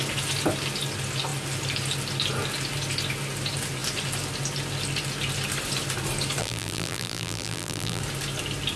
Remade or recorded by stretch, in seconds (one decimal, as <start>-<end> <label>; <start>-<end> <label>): 0.0-6.4 recorded; 6.4-8.0 remade; 8.0-8.8 recorded